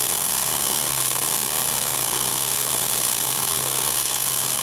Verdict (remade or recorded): remade